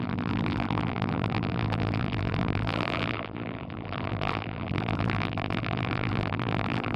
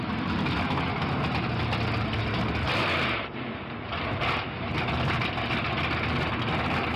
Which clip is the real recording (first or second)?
second